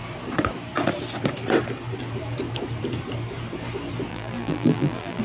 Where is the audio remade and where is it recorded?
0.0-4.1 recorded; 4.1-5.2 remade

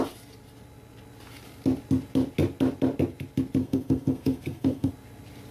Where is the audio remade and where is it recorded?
0.0-3.6 recorded; 3.6-4.9 remade; 4.9-5.5 recorded

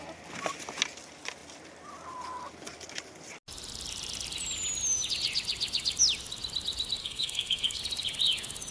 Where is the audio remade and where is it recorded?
0.0-7.0 recorded; 7.0-7.8 remade; 7.8-8.7 recorded

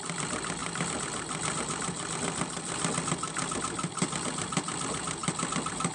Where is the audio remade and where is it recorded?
0.0-5.9 recorded

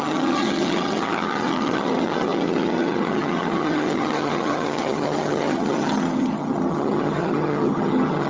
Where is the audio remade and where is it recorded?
0.0-8.3 remade